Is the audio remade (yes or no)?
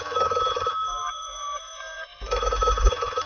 yes